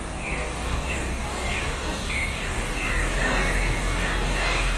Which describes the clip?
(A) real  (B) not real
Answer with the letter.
B